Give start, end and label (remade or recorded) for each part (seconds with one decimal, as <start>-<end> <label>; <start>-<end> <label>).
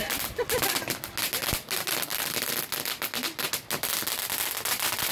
0.0-5.1 recorded